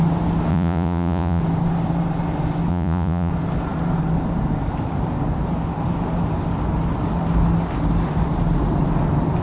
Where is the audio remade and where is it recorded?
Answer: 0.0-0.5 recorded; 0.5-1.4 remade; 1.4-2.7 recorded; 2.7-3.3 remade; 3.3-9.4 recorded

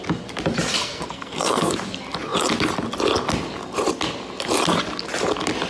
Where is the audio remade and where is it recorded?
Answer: 0.0-0.8 recorded; 0.8-1.7 remade; 1.7-5.7 recorded

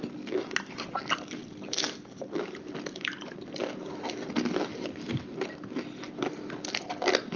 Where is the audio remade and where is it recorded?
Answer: 0.0-7.4 recorded

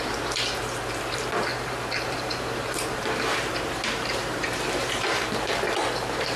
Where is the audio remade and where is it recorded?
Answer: 0.0-6.4 remade

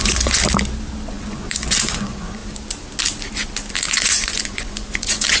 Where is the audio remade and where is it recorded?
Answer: 0.0-0.4 remade; 0.4-1.1 recorded; 1.1-2.4 remade; 2.4-3.7 recorded; 3.7-5.4 remade